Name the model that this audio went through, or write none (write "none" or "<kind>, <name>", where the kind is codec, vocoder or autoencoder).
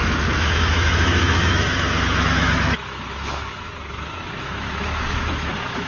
autoencoder, DAC-VAE